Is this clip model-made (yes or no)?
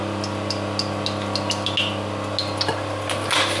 no